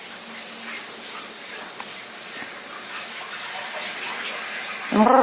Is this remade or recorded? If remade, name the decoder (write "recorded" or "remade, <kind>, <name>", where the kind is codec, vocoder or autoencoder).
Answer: recorded